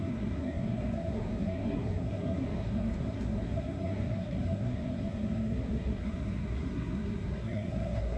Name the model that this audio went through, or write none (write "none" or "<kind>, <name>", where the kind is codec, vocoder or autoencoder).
codec, SNAC